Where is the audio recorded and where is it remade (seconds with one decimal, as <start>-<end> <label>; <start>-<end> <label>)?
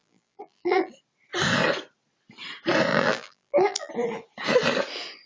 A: 0.0-0.9 remade; 0.9-2.9 recorded; 2.9-3.9 remade; 3.9-5.3 recorded